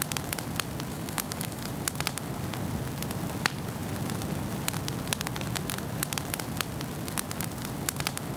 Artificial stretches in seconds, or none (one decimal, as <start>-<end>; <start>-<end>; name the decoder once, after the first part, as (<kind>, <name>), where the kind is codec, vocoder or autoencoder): 0.9-1.7 (codec, DAC)